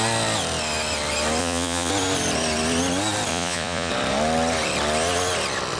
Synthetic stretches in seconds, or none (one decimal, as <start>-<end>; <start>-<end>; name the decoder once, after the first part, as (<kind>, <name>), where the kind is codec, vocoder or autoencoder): 1.4-1.9 (vocoder, Vocos); 3.3-3.9